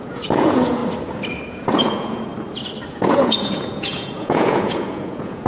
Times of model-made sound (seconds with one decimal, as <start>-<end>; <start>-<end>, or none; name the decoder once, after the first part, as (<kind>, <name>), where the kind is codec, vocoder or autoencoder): 0.0-0.8 (vocoder, Vocos); 1.5-2.3; 2.9-5.5

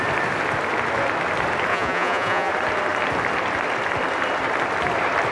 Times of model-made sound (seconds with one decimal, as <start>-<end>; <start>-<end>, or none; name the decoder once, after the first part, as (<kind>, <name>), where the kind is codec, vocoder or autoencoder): 1.7-2.5 (vocoder, Vocos)

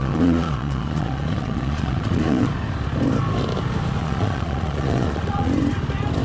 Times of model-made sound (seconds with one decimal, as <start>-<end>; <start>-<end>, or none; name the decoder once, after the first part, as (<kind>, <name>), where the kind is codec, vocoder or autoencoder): 0.0-2.5 (vocoder, Vocos); 4.0-5.5

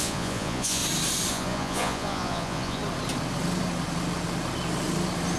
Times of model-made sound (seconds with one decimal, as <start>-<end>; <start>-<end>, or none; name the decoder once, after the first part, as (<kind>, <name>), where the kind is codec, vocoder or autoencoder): 0.0-0.8 (vocoder, Vocos); 1.3-2.8

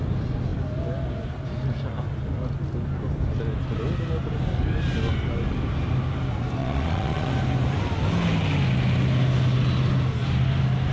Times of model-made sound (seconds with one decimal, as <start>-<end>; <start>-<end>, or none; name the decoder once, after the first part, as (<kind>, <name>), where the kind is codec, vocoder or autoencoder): 6.6-7.3 (vocoder, Vocos)

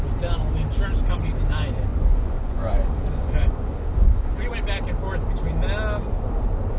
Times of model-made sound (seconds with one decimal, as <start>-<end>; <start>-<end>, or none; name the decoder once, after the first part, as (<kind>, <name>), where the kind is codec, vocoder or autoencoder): 1.9-4.5 (vocoder, Vocos)

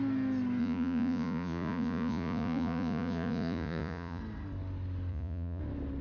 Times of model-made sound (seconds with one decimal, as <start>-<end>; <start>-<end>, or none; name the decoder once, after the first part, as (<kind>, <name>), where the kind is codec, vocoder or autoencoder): 0.6-4.2 (vocoder, Vocos); 5.1-5.6